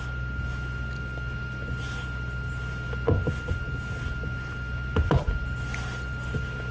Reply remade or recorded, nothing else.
recorded